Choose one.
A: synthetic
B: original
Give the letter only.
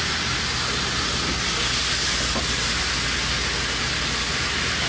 B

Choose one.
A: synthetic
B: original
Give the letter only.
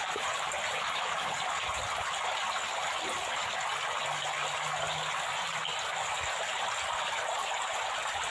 B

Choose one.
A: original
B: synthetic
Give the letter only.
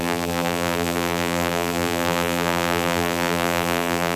B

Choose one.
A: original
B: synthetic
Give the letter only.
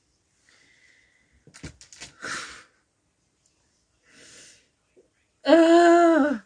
A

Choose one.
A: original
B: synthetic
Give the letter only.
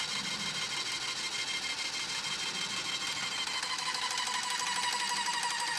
A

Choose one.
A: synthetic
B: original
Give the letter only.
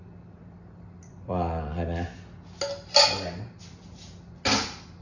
B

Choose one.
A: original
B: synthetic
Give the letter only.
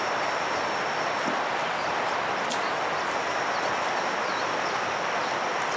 A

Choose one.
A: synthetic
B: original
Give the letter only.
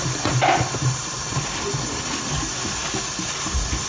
B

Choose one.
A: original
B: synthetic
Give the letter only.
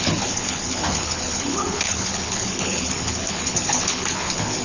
B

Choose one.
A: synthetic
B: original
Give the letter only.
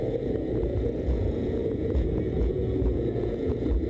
A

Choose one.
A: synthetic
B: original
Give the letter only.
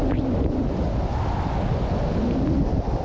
B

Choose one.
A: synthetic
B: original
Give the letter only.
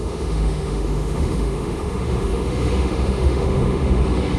A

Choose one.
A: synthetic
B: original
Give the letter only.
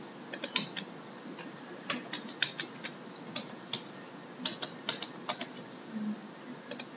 B